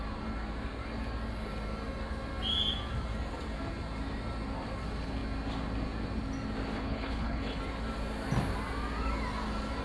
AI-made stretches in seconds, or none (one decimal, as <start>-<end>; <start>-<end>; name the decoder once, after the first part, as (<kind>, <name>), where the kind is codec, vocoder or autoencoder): 6.7-7.6 (codec, HILCodec)